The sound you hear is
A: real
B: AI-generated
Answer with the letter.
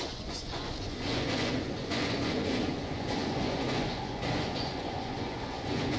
B